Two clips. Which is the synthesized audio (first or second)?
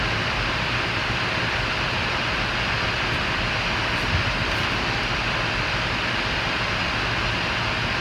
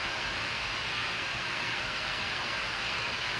second